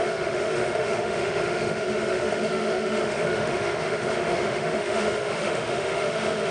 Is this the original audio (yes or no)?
no